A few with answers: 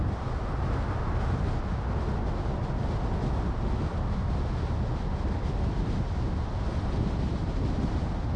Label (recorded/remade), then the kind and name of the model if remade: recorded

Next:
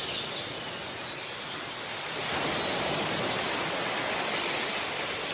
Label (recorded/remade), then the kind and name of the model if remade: recorded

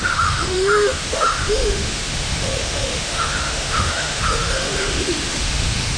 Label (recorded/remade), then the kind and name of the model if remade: remade, autoencoder, DAC-VAE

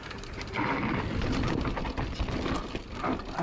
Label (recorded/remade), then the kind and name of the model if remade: recorded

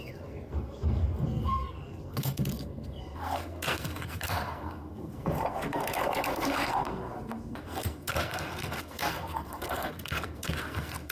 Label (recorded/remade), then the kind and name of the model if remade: remade, codec, SNAC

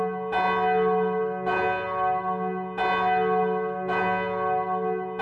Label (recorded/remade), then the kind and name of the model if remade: recorded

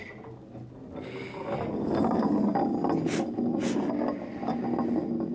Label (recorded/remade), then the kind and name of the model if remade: recorded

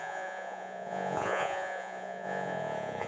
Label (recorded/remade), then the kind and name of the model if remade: remade, vocoder, Vocos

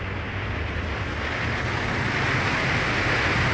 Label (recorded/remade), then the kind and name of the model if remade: recorded